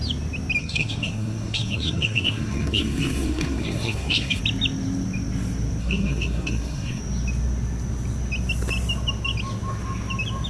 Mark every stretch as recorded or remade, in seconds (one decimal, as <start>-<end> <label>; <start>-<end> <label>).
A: 0.0-0.6 recorded; 0.6-4.4 remade; 4.4-5.8 recorded; 5.8-7.0 remade; 7.0-10.5 recorded